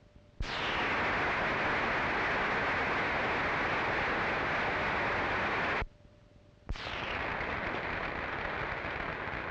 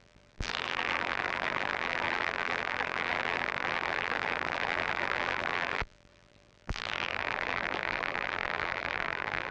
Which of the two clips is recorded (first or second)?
first